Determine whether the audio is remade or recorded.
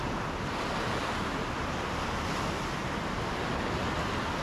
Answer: recorded